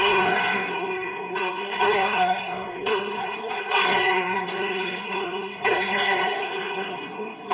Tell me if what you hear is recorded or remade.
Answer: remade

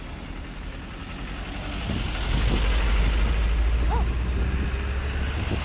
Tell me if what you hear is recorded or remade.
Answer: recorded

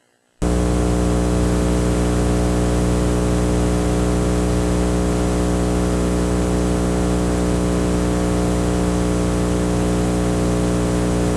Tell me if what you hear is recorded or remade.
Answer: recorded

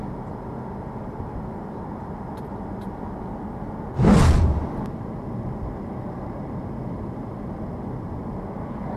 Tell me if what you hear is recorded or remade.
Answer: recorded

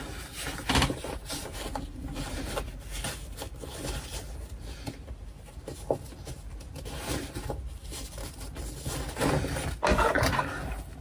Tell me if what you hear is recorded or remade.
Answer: recorded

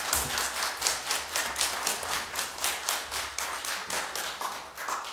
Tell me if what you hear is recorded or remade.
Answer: recorded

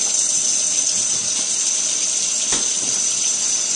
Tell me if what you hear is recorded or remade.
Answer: recorded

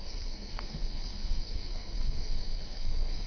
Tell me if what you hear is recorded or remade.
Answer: remade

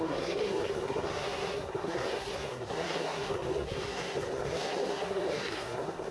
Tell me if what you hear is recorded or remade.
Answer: remade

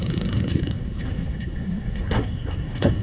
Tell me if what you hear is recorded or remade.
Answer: remade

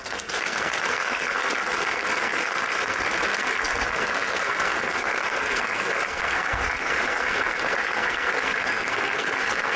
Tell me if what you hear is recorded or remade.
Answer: remade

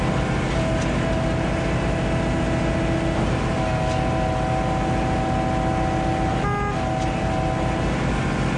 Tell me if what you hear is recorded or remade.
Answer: recorded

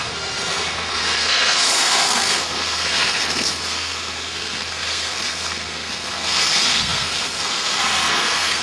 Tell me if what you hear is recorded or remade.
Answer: remade